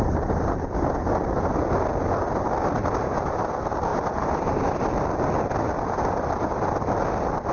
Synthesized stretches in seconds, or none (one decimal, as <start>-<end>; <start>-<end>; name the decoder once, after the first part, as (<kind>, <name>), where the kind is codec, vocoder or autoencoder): 2.8-3.5 (vocoder, BigVGAN v2); 3.9-4.6